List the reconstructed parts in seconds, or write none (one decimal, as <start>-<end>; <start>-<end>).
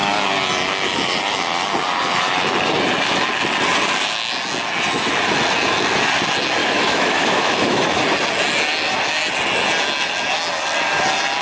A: 6.6-8.0